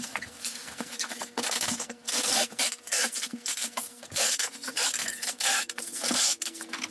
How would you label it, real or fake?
fake